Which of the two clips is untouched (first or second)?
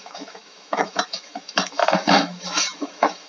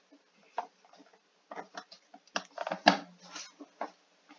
second